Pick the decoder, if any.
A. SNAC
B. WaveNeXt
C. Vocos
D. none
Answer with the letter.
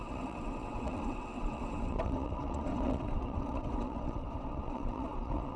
B